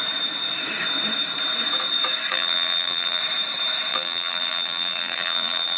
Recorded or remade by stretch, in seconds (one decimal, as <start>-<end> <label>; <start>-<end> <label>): 0.0-2.3 recorded; 2.3-3.2 remade; 3.2-3.9 recorded; 3.9-5.8 remade